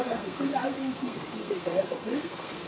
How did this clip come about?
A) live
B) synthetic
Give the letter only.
B